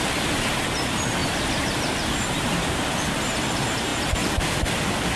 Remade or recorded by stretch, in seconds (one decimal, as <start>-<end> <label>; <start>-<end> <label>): 0.0-1.2 recorded; 1.2-2.7 remade; 2.7-5.2 recorded